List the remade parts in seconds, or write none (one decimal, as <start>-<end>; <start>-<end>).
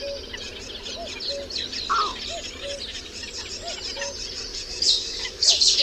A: 4.5-5.8